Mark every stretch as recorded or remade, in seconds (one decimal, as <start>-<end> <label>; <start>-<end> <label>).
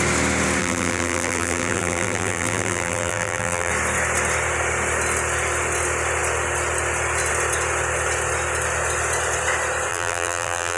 0.0-0.6 recorded; 0.6-3.7 remade; 3.7-9.9 recorded; 9.9-10.8 remade